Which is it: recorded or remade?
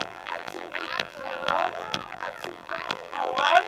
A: remade